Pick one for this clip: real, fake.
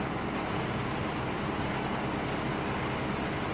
real